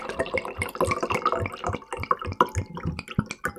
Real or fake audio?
real